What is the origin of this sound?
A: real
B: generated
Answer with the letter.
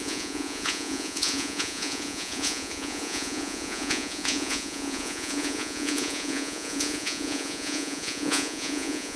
B